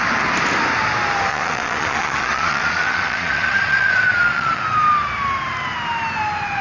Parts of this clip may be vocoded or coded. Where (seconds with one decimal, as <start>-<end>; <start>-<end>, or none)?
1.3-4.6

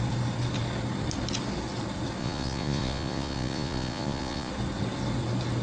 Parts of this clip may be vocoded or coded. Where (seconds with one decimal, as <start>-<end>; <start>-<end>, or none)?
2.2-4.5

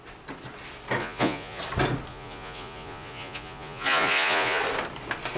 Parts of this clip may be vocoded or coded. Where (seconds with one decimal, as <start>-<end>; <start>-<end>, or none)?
1.0-1.6; 2.1-4.6

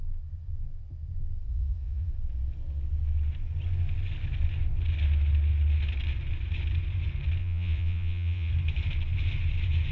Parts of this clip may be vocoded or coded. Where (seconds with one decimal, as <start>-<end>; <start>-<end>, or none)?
1.5-2.1; 7.4-8.5